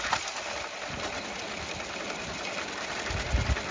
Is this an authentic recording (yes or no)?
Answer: yes